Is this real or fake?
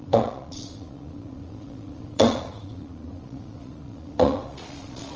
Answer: fake